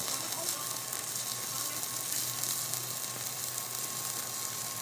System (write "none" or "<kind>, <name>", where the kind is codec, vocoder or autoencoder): none